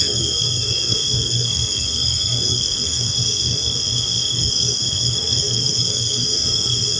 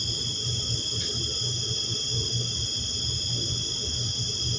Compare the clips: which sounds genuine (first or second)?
second